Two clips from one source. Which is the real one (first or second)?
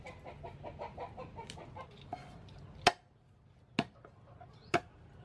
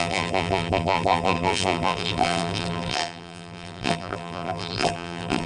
first